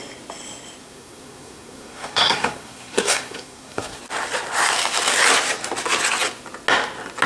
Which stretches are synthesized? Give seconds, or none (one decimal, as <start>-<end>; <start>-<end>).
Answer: 0.8-4.0